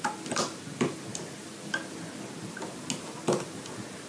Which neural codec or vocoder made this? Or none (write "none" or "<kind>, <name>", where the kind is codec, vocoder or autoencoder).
none